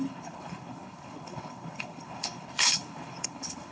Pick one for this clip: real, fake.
fake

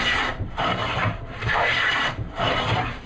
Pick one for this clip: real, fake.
fake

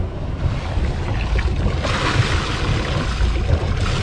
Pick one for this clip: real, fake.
real